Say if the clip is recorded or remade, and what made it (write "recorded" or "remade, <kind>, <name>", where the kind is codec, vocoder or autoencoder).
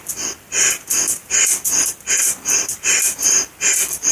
recorded